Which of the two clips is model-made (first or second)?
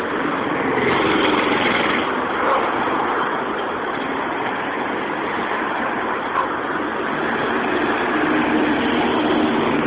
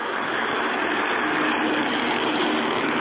second